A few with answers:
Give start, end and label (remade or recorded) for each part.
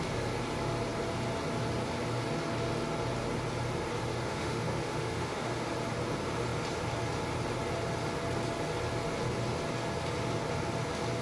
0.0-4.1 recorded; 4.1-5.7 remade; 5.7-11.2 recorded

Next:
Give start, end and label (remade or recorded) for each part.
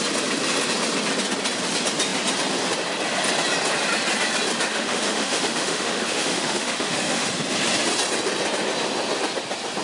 0.0-4.7 recorded; 4.7-7.3 remade; 7.3-9.8 recorded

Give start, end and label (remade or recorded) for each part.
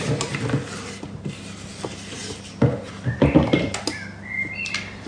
0.0-5.1 recorded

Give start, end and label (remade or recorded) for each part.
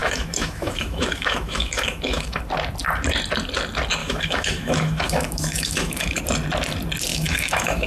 0.0-2.4 remade; 2.4-4.0 recorded; 4.0-6.2 remade; 6.2-7.1 recorded; 7.1-7.9 remade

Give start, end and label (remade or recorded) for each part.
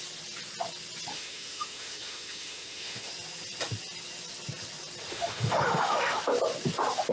0.0-1.1 recorded; 1.1-3.1 remade; 3.1-5.1 recorded; 5.1-6.2 remade; 6.2-7.1 recorded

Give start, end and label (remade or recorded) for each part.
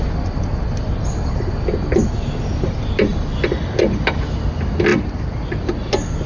0.0-6.3 recorded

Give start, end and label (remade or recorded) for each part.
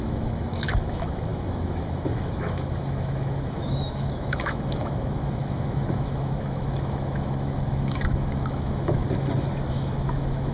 0.0-9.0 remade; 9.0-9.7 recorded; 9.7-10.5 remade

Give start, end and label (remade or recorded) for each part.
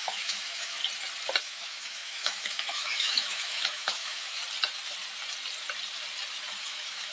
0.0-0.8 remade; 0.8-1.4 recorded; 1.4-4.4 remade; 4.4-6.6 recorded; 6.6-7.1 remade